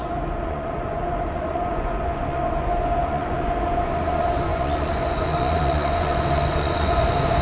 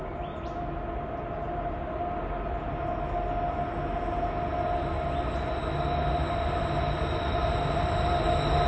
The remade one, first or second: first